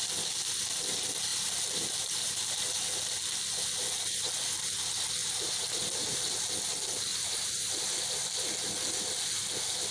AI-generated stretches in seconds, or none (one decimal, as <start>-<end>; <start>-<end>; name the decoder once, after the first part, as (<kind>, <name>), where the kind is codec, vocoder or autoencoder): 1.3-2.6 (vocoder, BigVGAN v2); 5.2-6.3; 7.1-7.8